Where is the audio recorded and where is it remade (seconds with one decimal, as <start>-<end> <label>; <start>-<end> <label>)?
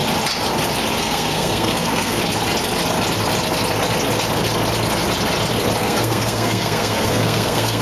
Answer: 0.0-1.0 recorded; 1.0-2.2 remade; 2.2-5.8 recorded; 5.8-7.8 remade